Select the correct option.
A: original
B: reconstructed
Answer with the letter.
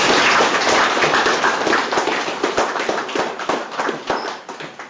A